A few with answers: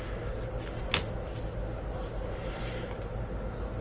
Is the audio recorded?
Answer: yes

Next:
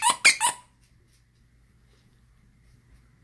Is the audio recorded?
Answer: yes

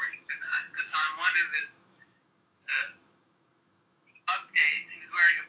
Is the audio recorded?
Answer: no